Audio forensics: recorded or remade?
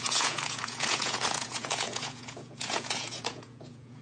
remade